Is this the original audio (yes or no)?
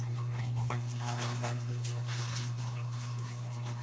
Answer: no